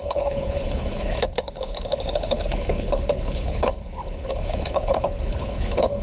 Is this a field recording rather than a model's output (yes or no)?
no